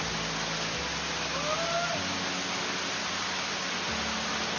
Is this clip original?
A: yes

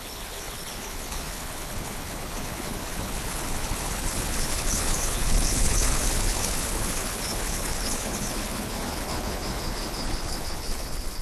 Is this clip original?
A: no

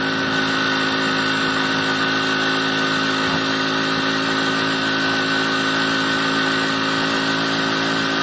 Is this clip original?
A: yes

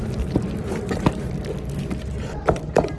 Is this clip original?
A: yes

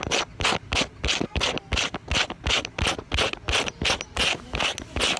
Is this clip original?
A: yes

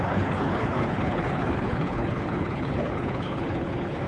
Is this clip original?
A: no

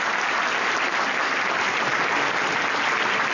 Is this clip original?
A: yes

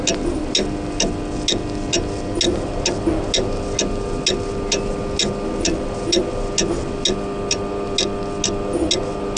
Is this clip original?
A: yes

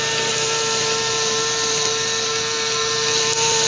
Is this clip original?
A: yes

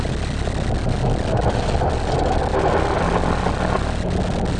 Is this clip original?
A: yes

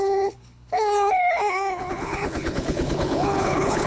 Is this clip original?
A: no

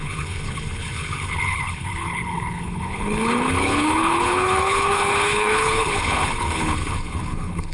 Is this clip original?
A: no